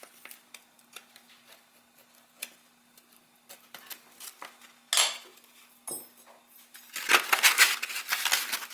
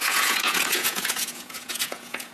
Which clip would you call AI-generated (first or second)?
second